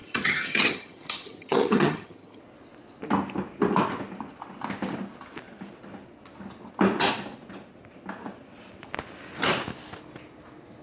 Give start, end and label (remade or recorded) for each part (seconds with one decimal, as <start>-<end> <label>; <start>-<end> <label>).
0.0-2.4 remade; 2.4-10.8 recorded